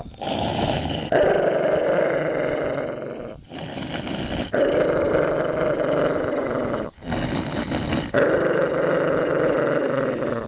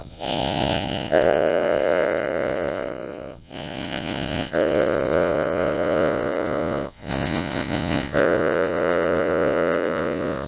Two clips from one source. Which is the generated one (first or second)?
second